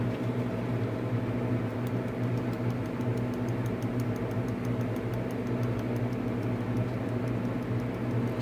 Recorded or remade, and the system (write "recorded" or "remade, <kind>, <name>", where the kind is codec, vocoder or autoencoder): recorded